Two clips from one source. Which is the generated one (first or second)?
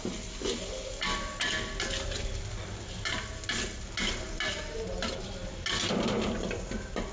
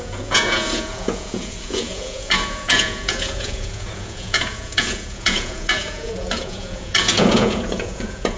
second